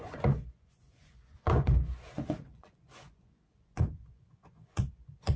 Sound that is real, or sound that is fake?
fake